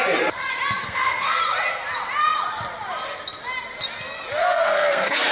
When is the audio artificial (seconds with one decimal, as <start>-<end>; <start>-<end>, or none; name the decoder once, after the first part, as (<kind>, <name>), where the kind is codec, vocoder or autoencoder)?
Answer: 0.8-1.4 (codec, SNAC); 4.4-5.3